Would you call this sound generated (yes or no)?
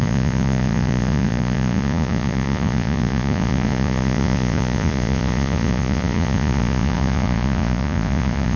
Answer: yes